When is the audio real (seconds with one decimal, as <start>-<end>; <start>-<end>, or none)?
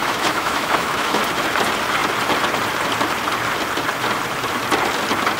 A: 1.2-5.4